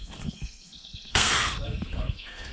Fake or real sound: fake